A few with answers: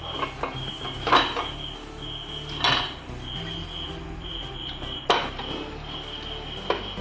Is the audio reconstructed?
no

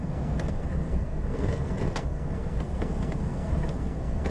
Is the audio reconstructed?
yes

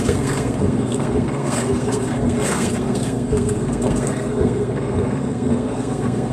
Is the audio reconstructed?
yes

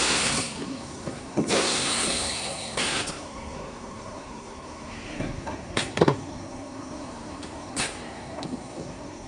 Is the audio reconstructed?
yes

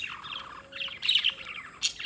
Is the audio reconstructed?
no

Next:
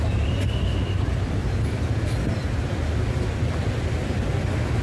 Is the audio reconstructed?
no